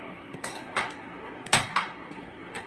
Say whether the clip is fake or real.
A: fake